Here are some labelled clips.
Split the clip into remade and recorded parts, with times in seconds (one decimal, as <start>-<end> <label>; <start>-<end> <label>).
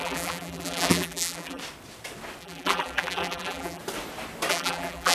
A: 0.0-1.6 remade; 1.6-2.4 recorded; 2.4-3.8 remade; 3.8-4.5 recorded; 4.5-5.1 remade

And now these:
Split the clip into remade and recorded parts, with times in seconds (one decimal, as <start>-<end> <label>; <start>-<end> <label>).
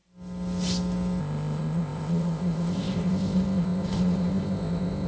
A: 0.0-1.2 recorded; 1.2-5.1 remade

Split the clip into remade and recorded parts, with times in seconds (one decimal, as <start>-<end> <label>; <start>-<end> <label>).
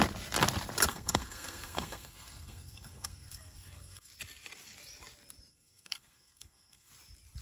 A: 0.0-0.9 recorded; 0.9-4.1 remade; 4.1-5.5 recorded; 5.5-6.9 remade; 6.9-7.4 recorded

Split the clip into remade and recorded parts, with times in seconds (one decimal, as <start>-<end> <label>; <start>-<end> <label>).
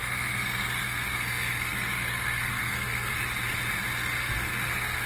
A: 0.0-3.1 remade; 3.1-4.0 recorded; 4.0-5.1 remade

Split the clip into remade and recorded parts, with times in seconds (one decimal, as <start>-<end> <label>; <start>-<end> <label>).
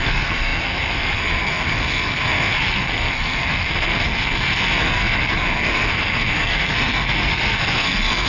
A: 0.0-8.3 remade